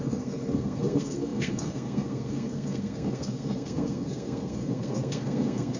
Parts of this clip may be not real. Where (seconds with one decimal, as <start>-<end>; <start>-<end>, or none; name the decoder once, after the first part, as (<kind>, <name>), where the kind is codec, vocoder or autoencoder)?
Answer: 0.0-5.8 (codec, SNAC)